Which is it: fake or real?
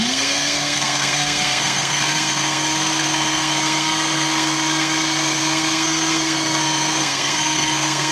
fake